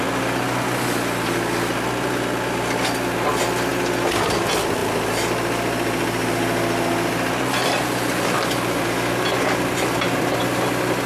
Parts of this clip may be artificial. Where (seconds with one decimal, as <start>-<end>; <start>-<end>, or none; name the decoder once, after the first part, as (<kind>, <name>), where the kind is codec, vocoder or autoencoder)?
3.7-4.3 (vocoder, BigVGAN v2); 4.8-9.1